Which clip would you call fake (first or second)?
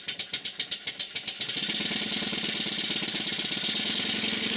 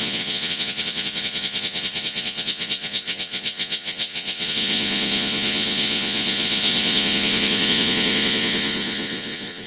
second